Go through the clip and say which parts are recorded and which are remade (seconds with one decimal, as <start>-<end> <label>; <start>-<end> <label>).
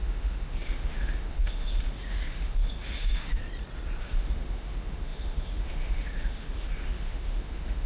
0.0-3.4 remade; 3.4-4.0 recorded; 4.0-7.9 remade